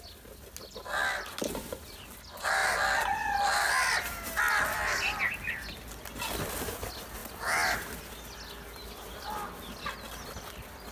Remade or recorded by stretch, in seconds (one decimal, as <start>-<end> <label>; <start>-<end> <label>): 0.0-10.9 recorded